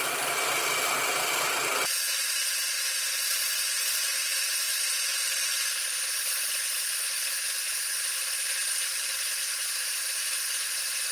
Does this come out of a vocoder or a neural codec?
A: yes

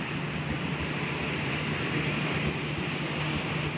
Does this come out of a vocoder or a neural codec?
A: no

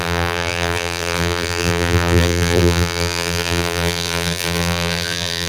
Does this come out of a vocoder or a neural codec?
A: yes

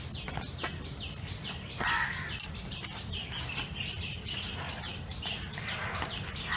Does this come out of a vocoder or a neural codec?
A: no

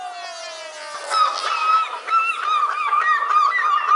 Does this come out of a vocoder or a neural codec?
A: no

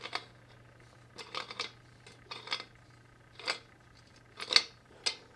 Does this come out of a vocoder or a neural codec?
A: no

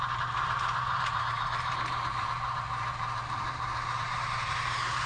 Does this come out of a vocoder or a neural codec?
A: yes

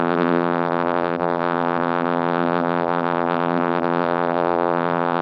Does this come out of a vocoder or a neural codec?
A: yes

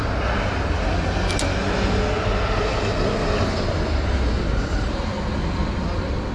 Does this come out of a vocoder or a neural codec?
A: no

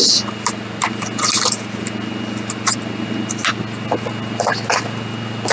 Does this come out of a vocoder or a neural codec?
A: no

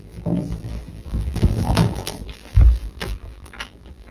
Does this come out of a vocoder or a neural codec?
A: yes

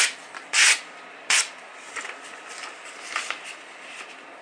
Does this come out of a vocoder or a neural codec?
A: yes